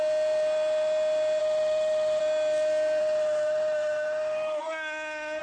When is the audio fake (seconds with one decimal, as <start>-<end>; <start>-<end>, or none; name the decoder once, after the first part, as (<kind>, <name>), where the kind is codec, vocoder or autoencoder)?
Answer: 1.4-2.2 (autoencoder, DAC-VAE); 3.0-5.4